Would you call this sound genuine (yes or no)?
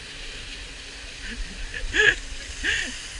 yes